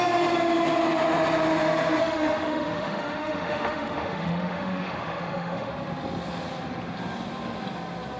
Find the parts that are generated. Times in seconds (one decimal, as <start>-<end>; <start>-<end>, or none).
2.0-5.7